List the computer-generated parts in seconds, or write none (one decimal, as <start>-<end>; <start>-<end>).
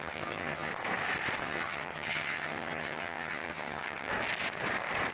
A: 0.0-0.7; 1.4-4.1